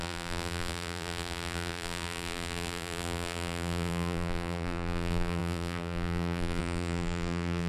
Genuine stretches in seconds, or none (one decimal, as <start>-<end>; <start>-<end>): none